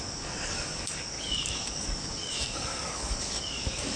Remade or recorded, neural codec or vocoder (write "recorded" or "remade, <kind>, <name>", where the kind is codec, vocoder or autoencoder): remade, codec, DAC